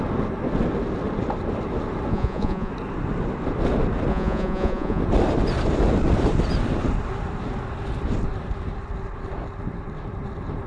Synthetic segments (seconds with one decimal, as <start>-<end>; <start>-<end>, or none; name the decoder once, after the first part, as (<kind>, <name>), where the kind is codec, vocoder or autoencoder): 2.1-2.7 (vocoder, Vocos); 4.1-5.0